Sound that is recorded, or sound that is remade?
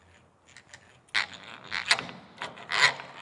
recorded